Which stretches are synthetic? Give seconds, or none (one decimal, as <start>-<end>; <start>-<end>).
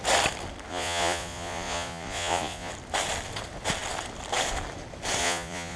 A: 0.7-2.7; 5.2-5.8